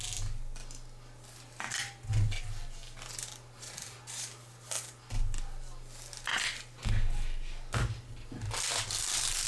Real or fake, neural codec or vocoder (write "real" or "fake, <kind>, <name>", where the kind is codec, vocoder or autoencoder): real